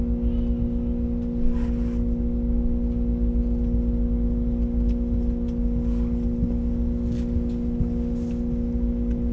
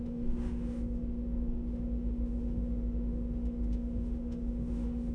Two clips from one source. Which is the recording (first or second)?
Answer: first